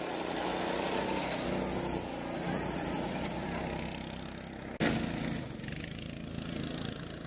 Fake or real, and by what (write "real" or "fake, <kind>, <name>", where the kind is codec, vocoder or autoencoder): real